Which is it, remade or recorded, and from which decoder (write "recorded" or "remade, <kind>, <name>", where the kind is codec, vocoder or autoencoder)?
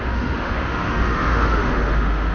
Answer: remade, autoencoder, DAC-VAE